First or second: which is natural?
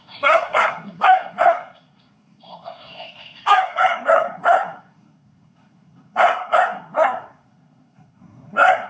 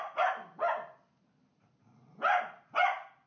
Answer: second